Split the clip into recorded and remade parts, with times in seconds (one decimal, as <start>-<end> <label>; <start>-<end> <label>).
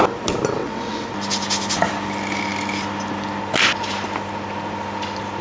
0.0-0.6 recorded; 0.6-1.1 remade; 1.1-5.4 recorded